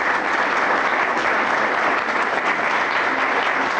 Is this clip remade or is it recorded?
recorded